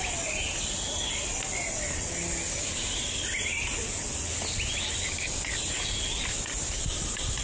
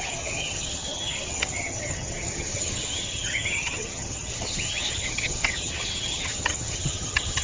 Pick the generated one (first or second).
second